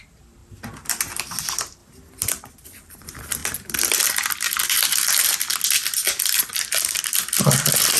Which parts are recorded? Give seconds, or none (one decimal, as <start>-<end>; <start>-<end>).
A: 1.8-2.3; 3.4-6.4